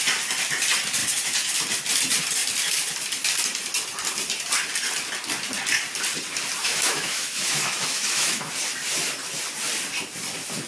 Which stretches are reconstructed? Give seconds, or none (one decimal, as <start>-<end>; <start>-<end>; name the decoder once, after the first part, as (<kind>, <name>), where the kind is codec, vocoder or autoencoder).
6.6-8.5 (autoencoder, DAC-VAE)